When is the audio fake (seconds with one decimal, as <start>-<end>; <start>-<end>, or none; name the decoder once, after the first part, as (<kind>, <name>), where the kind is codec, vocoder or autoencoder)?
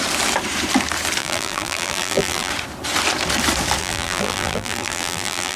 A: 1.2-2.5 (vocoder, BigVGAN v2); 3.8-5.6